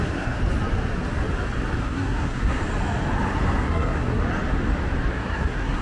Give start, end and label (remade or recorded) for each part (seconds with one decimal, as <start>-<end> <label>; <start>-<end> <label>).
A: 0.0-0.4 remade; 0.4-1.8 recorded; 1.8-2.6 remade; 2.6-3.6 recorded; 3.6-4.2 remade; 4.2-5.1 recorded; 5.1-5.8 remade